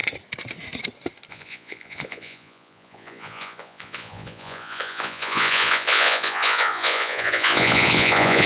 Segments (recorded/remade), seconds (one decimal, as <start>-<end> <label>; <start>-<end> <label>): 0.0-1.3 recorded; 1.3-8.5 remade